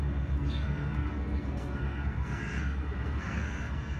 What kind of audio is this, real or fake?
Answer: fake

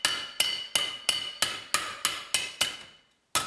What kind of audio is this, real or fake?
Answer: real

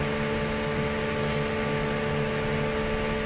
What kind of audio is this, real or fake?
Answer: real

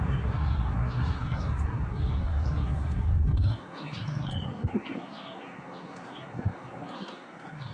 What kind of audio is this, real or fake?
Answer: fake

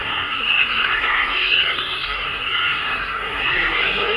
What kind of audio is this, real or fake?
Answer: fake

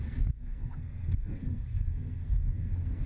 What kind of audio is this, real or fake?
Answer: fake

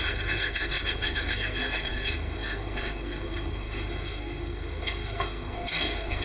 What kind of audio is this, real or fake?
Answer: fake